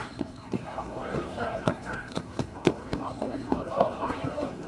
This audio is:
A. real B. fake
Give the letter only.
B